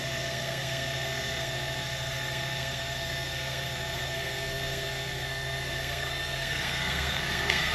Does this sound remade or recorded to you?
remade